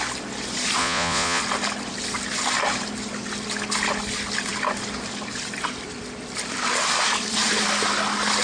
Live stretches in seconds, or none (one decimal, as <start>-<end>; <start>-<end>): 0.0-0.8; 1.4-8.4